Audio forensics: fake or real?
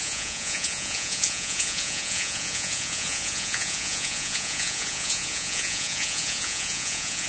fake